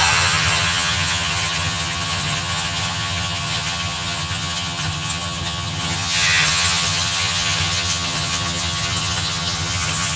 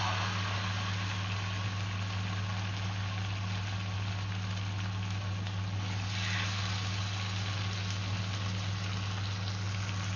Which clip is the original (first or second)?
second